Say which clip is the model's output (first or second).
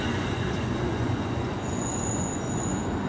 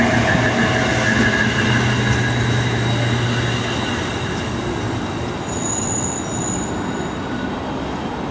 first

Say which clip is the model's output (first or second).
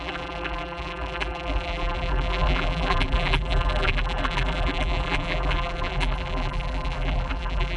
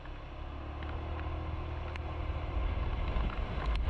first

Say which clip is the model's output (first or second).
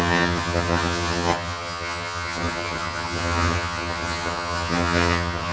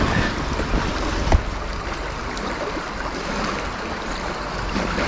first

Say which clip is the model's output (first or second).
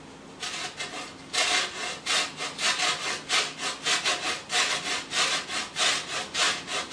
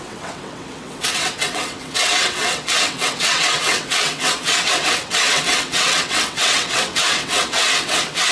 second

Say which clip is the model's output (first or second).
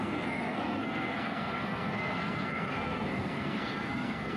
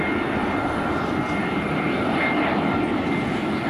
first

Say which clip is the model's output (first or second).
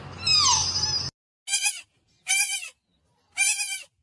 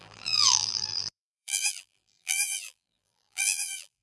second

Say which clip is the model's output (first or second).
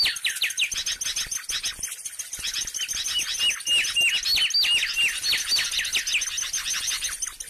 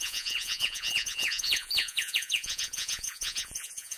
second